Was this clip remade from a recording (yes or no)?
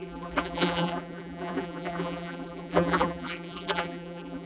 yes